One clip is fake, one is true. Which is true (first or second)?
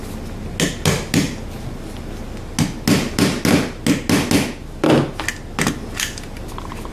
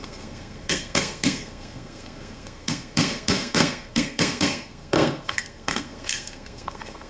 first